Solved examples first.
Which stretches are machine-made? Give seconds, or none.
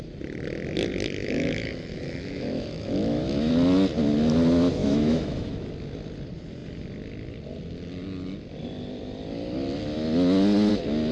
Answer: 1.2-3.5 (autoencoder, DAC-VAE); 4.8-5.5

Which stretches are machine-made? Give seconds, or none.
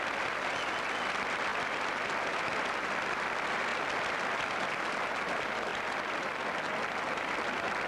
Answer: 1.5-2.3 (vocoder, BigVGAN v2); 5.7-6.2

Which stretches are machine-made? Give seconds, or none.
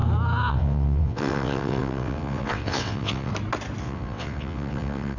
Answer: 0.5-3.3 (vocoder, WaveNeXt); 3.8-5.2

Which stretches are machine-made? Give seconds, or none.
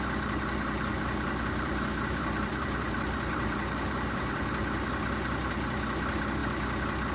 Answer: 0.9-4.5 (vocoder, BigVGAN v2)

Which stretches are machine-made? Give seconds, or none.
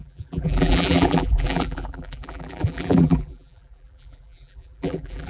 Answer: 0.0-5.3 (vocoder, BigVGAN v2)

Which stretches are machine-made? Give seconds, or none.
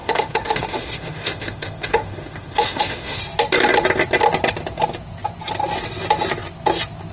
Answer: 0.0-3.2 (autoencoder, DAC-VAE)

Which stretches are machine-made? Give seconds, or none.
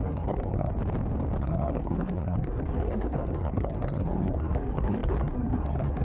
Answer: 0.0-0.7 (codec, SNAC); 1.4-6.0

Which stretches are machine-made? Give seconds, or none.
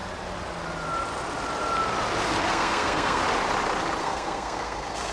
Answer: 2.5-3.2 (codec, SNAC); 4.0-5.1